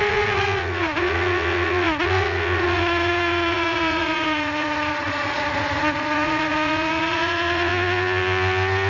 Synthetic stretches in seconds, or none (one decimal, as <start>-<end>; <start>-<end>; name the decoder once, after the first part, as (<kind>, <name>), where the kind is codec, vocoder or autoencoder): 0.0-7.7 (vocoder, Vocos)